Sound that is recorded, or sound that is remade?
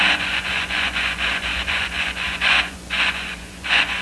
remade